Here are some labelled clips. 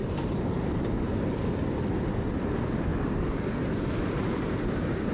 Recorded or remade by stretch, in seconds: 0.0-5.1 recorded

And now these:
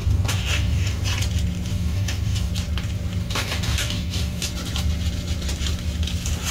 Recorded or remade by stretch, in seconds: 0.0-1.0 remade; 1.0-1.7 recorded; 1.7-2.5 remade; 2.5-3.2 recorded; 3.2-4.5 remade; 4.5-6.5 recorded

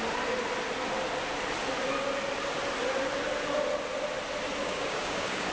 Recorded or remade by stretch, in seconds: 0.0-4.6 recorded; 4.6-5.5 remade

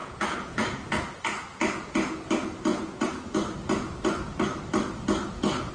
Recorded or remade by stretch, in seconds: 0.0-1.0 remade; 1.0-2.7 recorded; 2.7-3.2 remade; 3.2-5.7 recorded

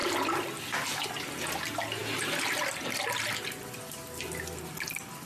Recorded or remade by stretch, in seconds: 0.0-5.3 recorded

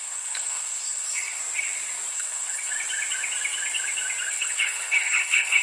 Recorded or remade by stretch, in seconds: 0.0-1.4 remade; 1.4-2.1 recorded; 2.1-2.7 remade; 2.7-4.3 recorded; 4.3-5.6 remade